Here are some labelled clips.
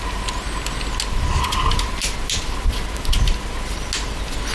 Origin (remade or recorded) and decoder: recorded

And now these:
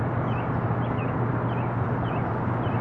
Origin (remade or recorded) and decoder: recorded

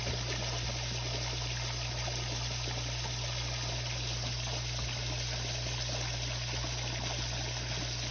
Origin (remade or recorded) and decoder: recorded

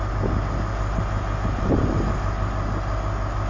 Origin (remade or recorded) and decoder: recorded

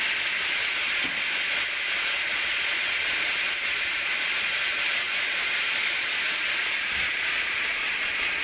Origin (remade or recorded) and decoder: remade, vocoder, Vocos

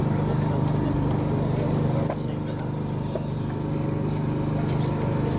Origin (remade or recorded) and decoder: recorded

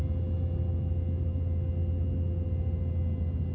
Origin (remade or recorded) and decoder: recorded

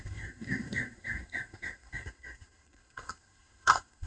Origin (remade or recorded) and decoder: remade, codec, SNAC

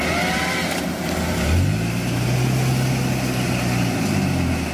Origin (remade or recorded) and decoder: recorded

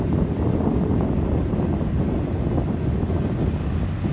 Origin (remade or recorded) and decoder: recorded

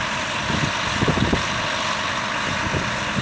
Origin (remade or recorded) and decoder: recorded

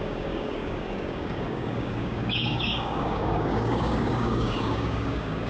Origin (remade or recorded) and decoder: remade, codec, DAC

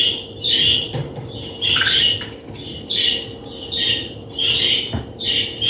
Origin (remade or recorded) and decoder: remade, vocoder, BigVGAN v2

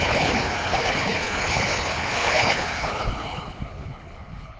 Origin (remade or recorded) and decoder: remade, codec, HILCodec